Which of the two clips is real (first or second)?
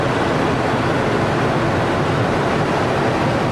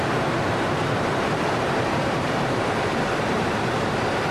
first